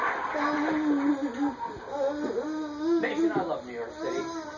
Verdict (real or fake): real